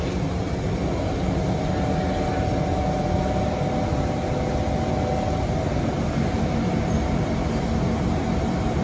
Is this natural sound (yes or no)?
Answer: yes